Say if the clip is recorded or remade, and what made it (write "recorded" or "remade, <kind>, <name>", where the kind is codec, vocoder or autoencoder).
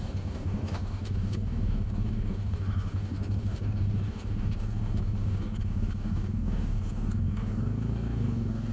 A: remade, codec, DAC